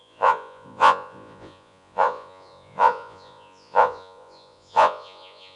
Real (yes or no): no